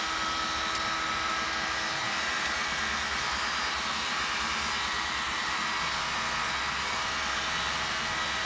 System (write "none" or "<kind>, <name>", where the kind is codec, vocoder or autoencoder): none